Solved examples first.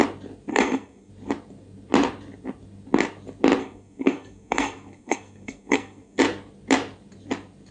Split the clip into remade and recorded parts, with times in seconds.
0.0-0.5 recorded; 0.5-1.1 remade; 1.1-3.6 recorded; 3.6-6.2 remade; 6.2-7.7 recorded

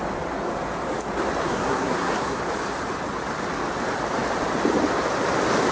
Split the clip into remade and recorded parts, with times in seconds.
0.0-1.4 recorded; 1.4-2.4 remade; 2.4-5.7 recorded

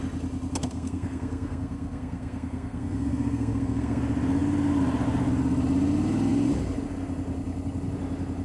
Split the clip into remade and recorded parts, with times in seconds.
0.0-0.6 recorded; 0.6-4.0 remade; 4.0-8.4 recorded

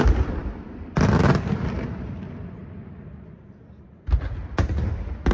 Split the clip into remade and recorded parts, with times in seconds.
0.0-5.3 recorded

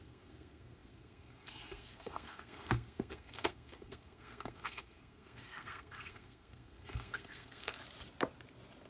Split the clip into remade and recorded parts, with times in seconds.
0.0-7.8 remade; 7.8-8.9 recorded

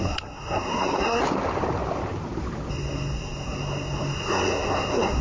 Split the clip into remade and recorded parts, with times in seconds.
0.0-1.2 remade; 1.2-2.7 recorded; 2.7-5.2 remade